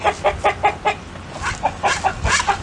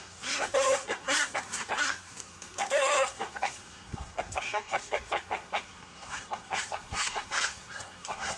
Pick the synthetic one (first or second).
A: second